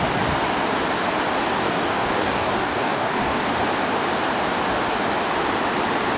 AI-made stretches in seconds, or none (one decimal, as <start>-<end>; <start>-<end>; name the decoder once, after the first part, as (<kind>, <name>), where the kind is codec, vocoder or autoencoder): 1.6-3.5 (codec, DAC)